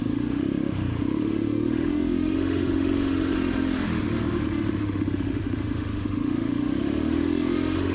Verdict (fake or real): fake